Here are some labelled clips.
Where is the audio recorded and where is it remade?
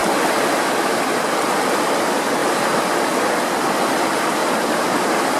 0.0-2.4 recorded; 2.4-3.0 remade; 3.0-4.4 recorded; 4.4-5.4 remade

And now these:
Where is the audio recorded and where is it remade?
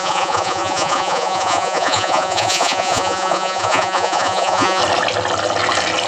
0.0-4.8 remade; 4.8-6.1 recorded